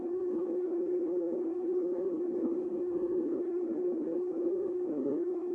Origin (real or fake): fake